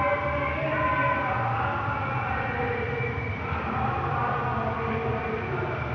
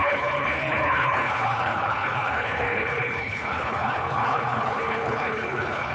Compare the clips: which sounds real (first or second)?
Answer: first